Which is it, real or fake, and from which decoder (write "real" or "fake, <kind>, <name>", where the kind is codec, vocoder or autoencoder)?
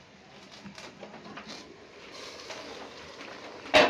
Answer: real